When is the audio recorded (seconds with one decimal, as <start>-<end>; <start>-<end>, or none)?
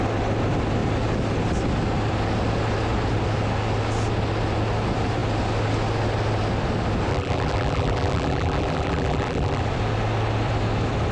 0.0-7.1; 9.6-11.1